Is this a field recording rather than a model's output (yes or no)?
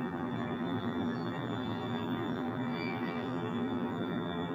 no